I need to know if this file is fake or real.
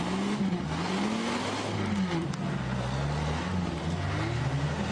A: real